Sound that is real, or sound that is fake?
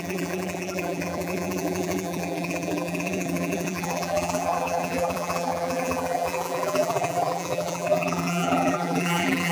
fake